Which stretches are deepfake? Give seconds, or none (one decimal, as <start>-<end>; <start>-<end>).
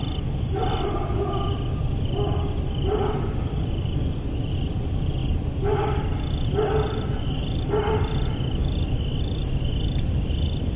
none